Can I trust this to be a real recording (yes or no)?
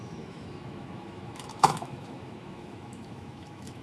no